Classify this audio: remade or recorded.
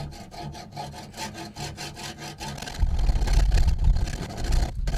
recorded